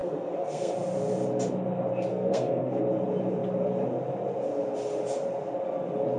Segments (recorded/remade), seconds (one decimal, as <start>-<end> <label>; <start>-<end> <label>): 0.0-0.7 remade; 0.7-2.1 recorded; 2.1-2.8 remade; 2.8-6.2 recorded